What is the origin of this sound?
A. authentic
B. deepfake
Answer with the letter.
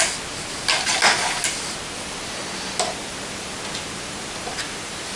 A